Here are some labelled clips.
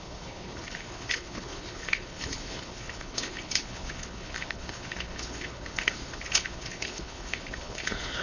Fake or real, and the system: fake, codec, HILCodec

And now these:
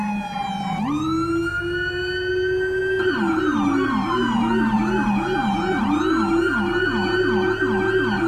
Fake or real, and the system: real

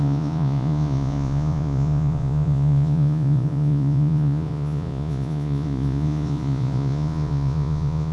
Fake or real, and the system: fake, vocoder, Vocos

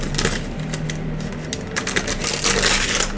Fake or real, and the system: real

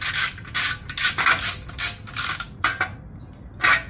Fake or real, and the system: real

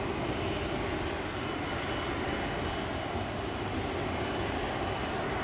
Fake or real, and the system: real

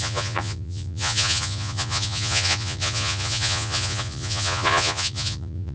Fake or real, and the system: fake, vocoder, Vocos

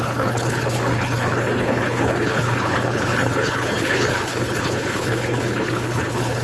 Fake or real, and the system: fake, codec, HILCodec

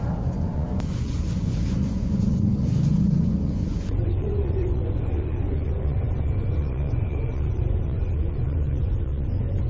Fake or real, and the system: fake, vocoder, Vocos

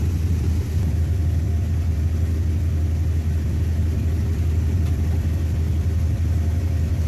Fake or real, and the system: fake, vocoder, BigVGAN v2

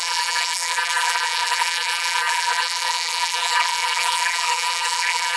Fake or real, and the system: fake, vocoder, BigVGAN v2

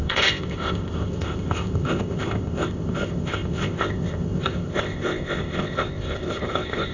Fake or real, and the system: fake, codec, ZipCodec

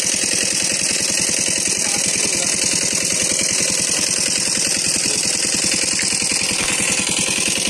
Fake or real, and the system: real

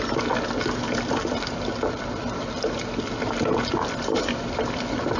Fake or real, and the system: real